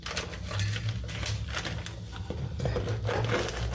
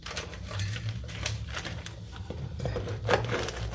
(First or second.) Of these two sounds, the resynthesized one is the second